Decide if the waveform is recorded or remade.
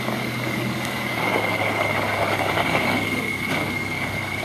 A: remade